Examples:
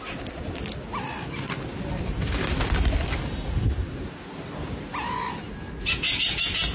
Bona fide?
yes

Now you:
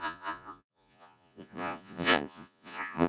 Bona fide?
no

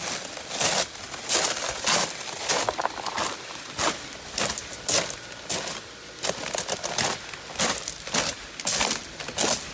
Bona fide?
yes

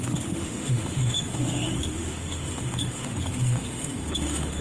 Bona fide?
no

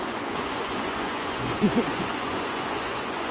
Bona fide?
no